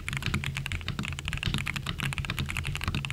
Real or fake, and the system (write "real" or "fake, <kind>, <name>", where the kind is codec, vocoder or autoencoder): fake, vocoder, BigVGAN v2